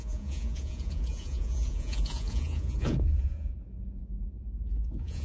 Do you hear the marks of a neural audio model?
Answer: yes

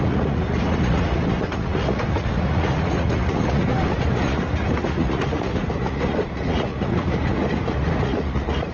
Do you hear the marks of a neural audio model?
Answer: yes